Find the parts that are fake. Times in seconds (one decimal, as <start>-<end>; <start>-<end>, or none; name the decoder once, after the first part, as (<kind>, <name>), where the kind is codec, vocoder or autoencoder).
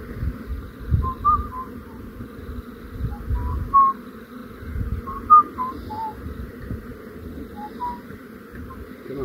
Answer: 0.5-2.4 (vocoder, BigVGAN v2)